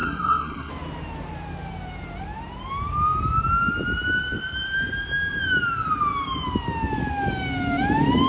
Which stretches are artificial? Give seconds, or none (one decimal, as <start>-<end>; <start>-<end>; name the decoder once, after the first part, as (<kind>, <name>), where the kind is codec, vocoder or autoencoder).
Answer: 0.0-0.7 (codec, SNAC)